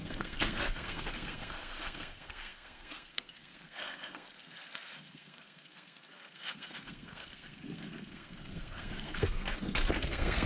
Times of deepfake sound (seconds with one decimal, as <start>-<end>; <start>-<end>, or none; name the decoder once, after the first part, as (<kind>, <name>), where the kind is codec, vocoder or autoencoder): 0.0-10.5 (codec, SNAC)